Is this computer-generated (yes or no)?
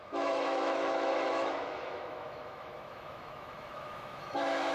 yes